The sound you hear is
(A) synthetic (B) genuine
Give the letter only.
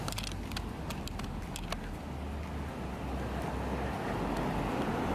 B